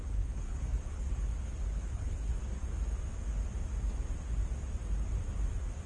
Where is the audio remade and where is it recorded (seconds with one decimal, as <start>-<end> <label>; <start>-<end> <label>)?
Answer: 0.0-2.3 remade; 2.3-5.9 recorded